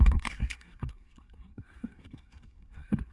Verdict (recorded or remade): remade